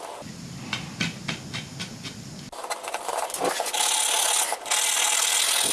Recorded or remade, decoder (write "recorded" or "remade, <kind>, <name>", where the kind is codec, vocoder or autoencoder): recorded